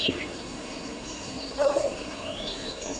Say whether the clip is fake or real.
fake